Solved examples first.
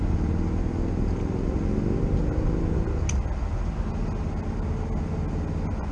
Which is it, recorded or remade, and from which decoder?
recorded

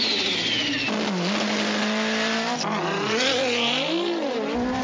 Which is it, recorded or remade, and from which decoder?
recorded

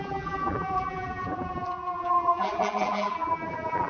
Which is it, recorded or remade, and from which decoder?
remade, vocoder, BigVGAN v2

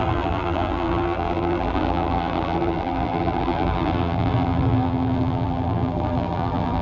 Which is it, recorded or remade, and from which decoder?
remade, vocoder, BigVGAN v2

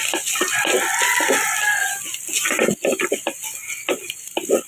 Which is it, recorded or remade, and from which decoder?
recorded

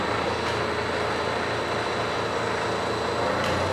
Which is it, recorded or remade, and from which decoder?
recorded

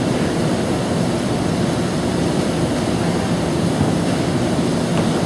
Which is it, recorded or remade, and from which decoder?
remade, vocoder, BigVGAN v2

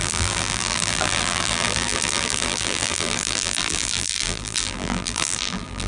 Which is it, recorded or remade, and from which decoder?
remade, vocoder, BigVGAN v2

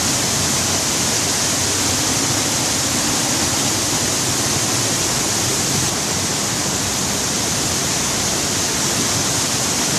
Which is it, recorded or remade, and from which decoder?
recorded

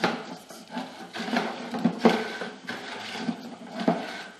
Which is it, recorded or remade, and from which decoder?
recorded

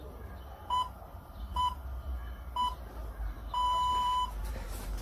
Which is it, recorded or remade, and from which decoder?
remade, vocoder, BigVGAN v2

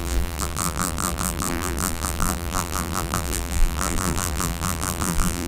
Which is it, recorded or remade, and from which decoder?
remade, vocoder, BigVGAN v2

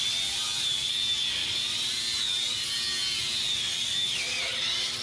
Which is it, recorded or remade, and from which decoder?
recorded